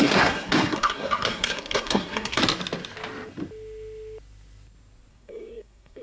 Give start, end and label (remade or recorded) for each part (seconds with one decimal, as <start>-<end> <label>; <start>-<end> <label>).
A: 0.0-2.4 remade; 2.4-5.1 recorded; 5.1-6.0 remade